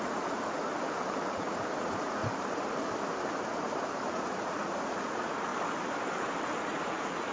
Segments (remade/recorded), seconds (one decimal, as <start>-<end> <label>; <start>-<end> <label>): 0.0-0.7 remade; 0.7-1.3 recorded; 1.3-2.2 remade; 2.2-4.1 recorded; 4.1-5.5 remade; 5.5-6.6 recorded; 6.6-7.3 remade